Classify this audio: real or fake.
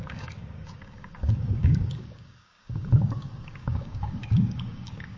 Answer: fake